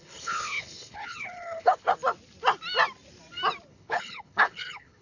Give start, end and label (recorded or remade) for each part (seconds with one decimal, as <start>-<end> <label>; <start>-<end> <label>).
0.0-1.9 remade; 1.9-3.7 recorded; 3.7-5.0 remade

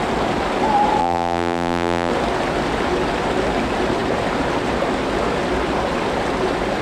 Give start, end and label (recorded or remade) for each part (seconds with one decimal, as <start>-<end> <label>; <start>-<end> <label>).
0.0-1.0 recorded; 1.0-2.1 remade; 2.1-6.8 recorded

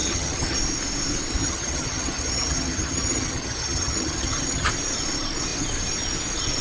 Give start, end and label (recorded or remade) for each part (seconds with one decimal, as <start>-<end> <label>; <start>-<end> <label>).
0.0-0.6 remade; 0.6-1.4 recorded; 1.4-4.7 remade; 4.7-6.6 recorded

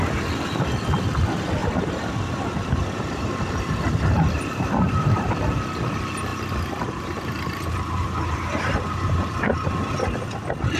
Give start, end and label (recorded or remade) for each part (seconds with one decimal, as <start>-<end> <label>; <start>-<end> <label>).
0.0-1.6 recorded; 1.6-5.3 remade; 5.3-6.3 recorded; 6.3-9.9 remade; 9.9-10.8 recorded

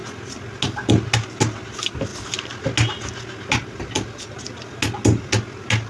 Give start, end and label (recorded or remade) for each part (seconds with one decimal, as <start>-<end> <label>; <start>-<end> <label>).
0.0-5.9 recorded

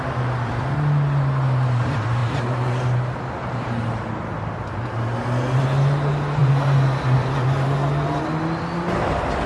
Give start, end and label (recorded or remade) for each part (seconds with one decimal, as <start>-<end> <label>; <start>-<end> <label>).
0.0-9.5 recorded

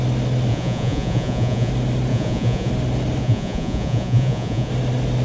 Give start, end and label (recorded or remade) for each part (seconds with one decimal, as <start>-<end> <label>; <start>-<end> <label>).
0.0-0.5 recorded; 0.5-1.7 remade; 1.7-2.1 recorded; 2.1-2.7 remade; 2.7-3.2 recorded; 3.2-4.7 remade; 4.7-5.2 recorded

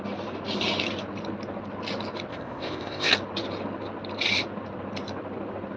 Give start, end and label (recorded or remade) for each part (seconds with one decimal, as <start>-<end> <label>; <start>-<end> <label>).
0.0-2.3 recorded; 2.3-3.1 remade; 3.1-5.8 recorded